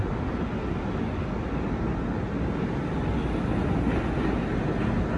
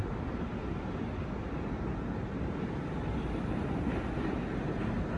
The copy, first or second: second